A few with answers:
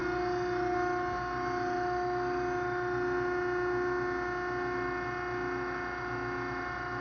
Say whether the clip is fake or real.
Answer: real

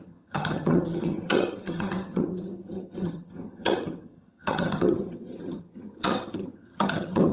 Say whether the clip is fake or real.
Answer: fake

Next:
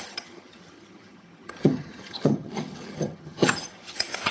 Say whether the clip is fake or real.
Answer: fake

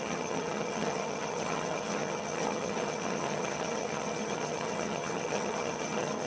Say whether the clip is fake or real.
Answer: fake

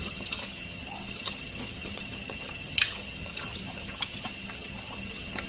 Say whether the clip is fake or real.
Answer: fake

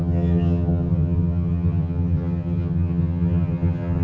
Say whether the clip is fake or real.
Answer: fake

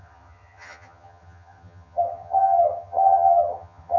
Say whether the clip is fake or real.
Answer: fake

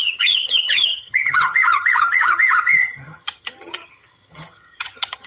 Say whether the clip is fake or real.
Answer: fake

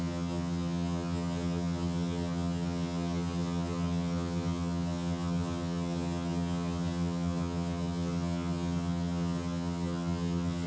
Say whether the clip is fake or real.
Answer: fake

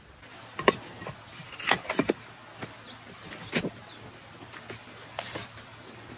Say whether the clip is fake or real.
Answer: real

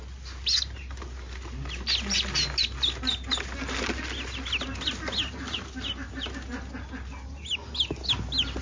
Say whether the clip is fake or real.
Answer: real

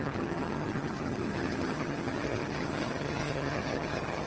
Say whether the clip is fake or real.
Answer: fake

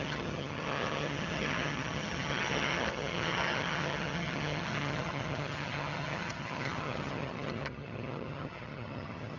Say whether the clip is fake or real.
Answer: fake